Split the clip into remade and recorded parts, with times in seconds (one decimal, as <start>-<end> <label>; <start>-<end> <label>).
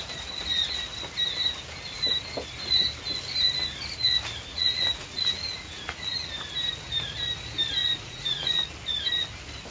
0.0-4.5 recorded; 4.5-6.3 remade; 6.3-7.8 recorded; 7.8-8.7 remade; 8.7-9.7 recorded